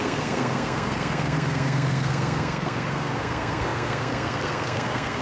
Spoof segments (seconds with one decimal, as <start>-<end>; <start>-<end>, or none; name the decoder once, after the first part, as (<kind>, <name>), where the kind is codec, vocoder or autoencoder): 0.0-5.2 (codec, SNAC)